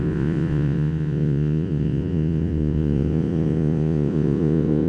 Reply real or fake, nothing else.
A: fake